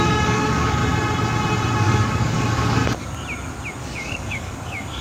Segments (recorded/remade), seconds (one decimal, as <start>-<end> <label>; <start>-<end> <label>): 0.0-0.8 remade; 0.8-1.8 recorded; 1.8-2.8 remade; 2.8-3.8 recorded; 3.8-5.0 remade